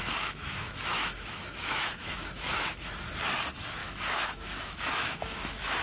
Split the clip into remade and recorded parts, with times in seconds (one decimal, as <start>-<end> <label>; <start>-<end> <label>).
0.0-2.9 remade; 2.9-3.8 recorded; 3.8-5.8 remade